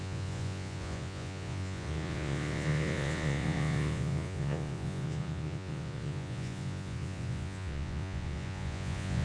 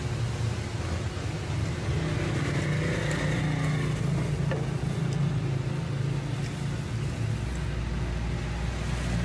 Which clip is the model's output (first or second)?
first